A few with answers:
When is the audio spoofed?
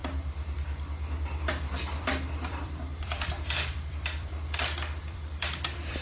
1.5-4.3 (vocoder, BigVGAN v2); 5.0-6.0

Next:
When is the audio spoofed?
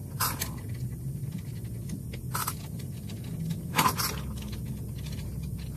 none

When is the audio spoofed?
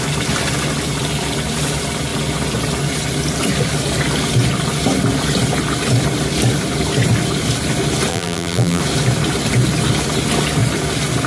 8.1-8.8 (vocoder, BigVGAN v2)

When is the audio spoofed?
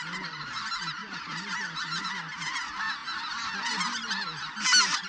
1.0-2.0 (vocoder, BigVGAN v2)